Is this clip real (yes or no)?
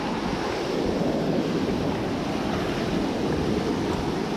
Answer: yes